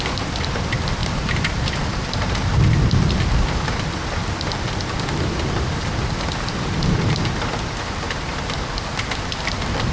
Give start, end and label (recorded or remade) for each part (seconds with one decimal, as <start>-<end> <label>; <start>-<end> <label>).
0.0-1.0 recorded; 1.0-2.5 remade; 2.5-9.9 recorded